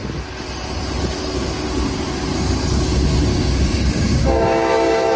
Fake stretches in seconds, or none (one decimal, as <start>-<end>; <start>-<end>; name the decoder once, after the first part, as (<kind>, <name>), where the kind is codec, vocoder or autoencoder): 3.3-5.2 (codec, DAC)

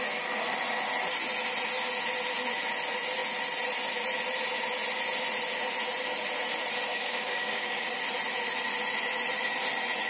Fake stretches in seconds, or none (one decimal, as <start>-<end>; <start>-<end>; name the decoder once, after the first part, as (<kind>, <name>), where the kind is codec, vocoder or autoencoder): 6.9-7.9 (codec, DAC)

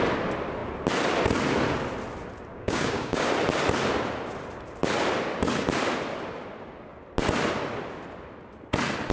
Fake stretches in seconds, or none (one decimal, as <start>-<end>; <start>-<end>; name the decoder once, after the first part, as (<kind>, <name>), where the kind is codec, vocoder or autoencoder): 2.5-3.3 (codec, DAC)

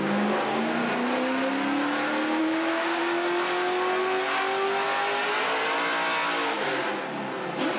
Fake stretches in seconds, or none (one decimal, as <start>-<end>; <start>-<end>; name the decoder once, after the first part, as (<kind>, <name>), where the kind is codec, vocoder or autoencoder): 0.0-0.8 (codec, DAC); 2.4-3.0